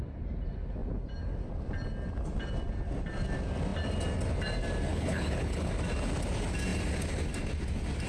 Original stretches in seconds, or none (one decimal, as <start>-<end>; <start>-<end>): 0.0-4.9; 5.7-8.1